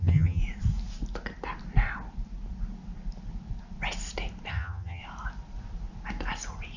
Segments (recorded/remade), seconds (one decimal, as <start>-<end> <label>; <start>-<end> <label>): 0.0-0.4 remade; 0.4-4.5 recorded; 4.5-5.0 remade; 5.0-6.8 recorded